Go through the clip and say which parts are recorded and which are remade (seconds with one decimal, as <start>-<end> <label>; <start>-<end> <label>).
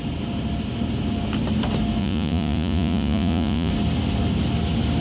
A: 0.0-2.0 recorded; 2.0-3.7 remade; 3.7-5.0 recorded